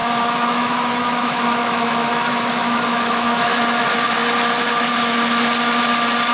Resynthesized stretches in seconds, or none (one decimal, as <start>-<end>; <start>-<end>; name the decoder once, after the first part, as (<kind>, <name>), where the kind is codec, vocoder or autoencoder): 0.0-3.8 (autoencoder, DAC-VAE)